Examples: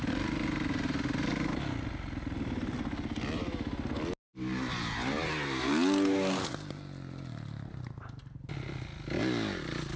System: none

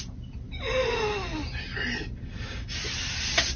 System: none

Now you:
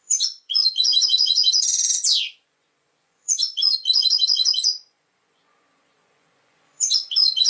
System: vocoder, Vocos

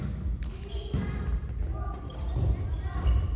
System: none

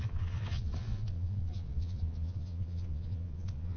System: vocoder, Vocos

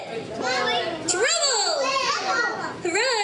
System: none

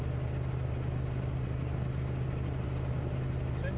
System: none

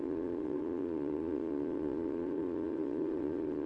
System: vocoder, Vocos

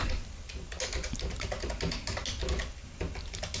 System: none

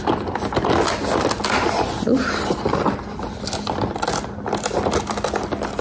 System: none